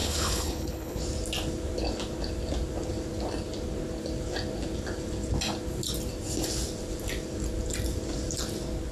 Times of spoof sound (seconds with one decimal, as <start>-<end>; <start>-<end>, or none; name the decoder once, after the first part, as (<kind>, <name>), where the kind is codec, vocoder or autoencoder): 0.0-1.0 (codec, HILCodec)